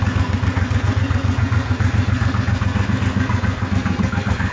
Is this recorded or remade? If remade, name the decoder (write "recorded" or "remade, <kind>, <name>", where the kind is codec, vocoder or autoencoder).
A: remade, codec, SNAC